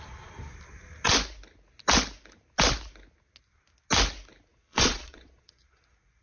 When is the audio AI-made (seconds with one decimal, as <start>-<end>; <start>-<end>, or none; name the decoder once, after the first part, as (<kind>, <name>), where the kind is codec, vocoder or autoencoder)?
4.5-6.2 (vocoder, Vocos)